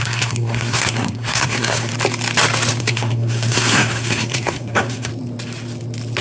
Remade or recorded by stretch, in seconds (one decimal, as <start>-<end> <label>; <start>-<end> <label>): 0.0-1.9 remade; 1.9-2.8 recorded; 2.8-5.1 remade; 5.1-6.2 recorded